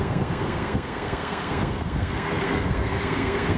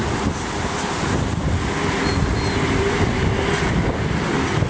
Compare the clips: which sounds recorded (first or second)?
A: second